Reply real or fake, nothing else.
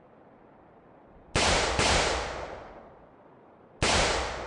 real